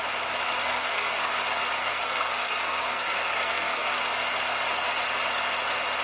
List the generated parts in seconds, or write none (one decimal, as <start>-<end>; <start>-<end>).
0.6-1.3; 1.8-4.0